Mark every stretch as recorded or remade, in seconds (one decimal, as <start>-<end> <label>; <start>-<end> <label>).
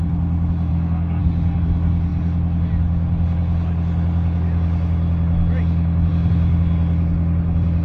0.0-0.7 recorded; 0.7-1.2 remade; 1.2-7.8 recorded